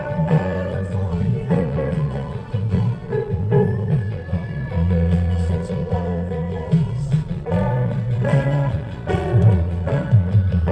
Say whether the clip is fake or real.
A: fake